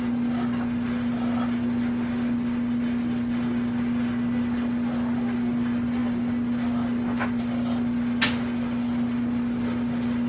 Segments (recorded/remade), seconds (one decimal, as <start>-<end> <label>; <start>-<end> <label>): 0.0-10.3 recorded